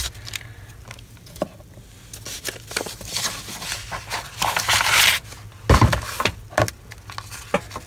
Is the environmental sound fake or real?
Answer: real